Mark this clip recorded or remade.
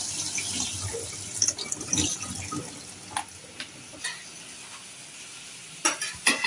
recorded